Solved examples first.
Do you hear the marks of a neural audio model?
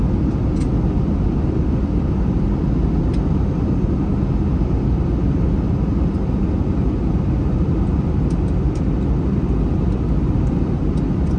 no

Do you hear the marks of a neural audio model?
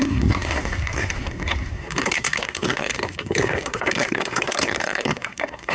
yes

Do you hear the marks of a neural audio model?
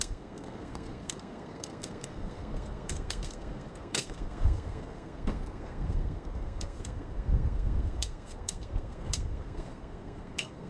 yes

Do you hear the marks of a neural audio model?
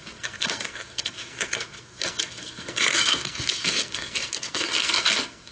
yes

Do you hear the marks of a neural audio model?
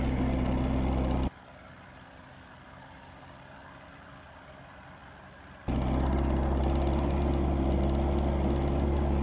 no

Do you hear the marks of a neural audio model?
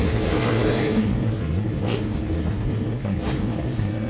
yes